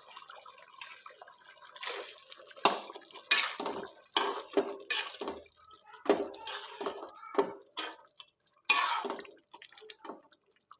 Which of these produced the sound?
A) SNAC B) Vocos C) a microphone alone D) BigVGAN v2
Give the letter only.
C